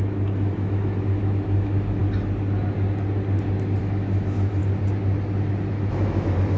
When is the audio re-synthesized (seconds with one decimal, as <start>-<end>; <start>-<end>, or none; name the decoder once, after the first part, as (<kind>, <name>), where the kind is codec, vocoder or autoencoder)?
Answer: 0.0-2.0 (autoencoder, DAC-VAE); 3.8-4.6; 5.7-6.6